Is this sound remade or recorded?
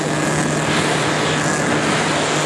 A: recorded